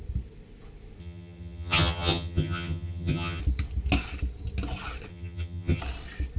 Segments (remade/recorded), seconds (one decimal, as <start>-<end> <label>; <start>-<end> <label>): 0.0-1.0 recorded; 1.0-3.4 remade; 3.4-5.1 recorded; 5.1-5.8 remade; 5.8-6.4 recorded